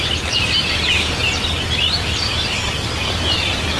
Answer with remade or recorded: recorded